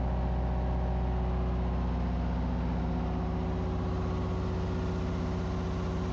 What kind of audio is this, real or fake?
real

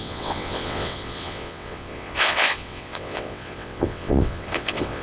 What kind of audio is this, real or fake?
fake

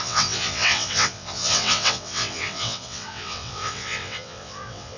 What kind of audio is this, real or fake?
fake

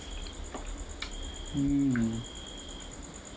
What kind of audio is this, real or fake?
real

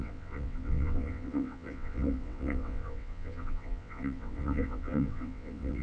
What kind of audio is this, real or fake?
fake